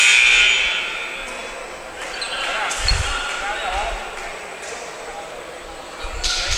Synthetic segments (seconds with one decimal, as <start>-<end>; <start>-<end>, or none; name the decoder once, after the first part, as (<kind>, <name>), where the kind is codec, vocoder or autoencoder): 1.4-2.3 (vocoder, BigVGAN v2); 4.3-6.0